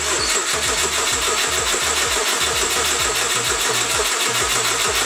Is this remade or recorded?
recorded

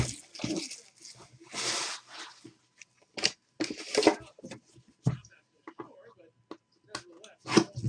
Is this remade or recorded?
recorded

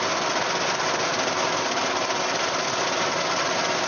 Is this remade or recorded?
recorded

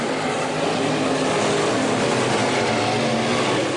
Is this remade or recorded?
recorded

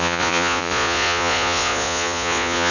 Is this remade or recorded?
remade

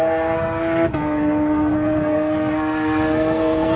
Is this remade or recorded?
remade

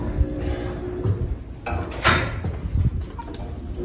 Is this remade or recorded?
recorded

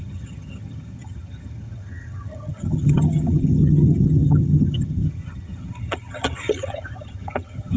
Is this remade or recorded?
remade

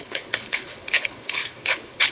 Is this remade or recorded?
remade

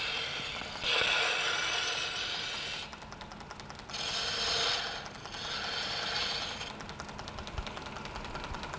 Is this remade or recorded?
recorded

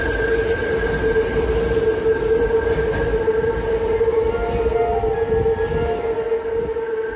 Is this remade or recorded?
recorded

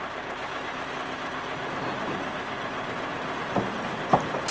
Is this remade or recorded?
recorded